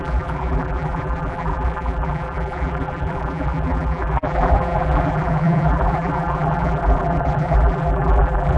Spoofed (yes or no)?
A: yes